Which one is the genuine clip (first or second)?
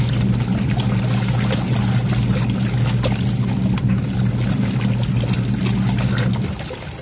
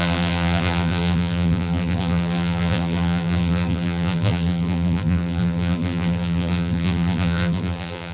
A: first